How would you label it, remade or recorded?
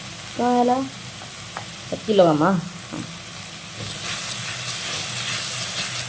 recorded